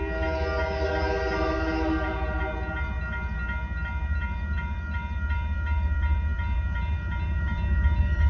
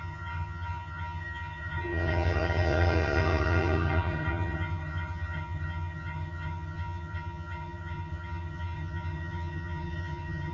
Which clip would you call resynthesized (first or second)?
second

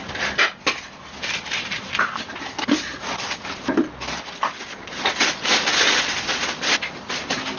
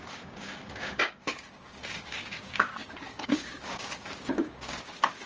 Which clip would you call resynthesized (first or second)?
second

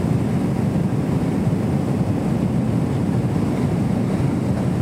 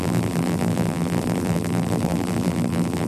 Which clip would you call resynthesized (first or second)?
second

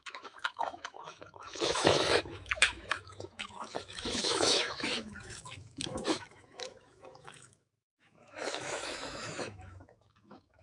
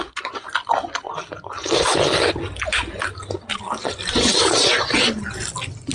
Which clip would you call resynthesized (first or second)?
first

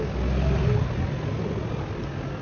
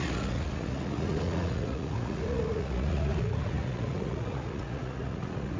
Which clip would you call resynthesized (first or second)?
second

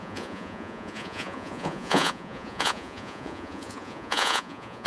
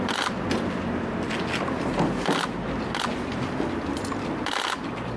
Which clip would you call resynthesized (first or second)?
first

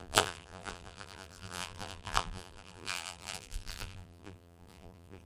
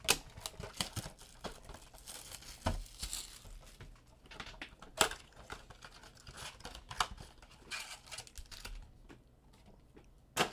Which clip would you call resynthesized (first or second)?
first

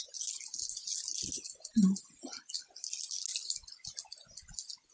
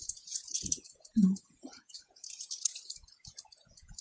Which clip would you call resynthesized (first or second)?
second